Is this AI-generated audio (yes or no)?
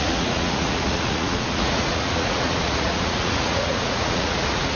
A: yes